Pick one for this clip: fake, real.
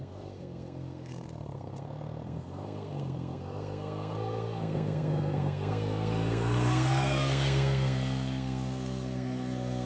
fake